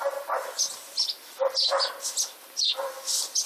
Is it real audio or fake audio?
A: real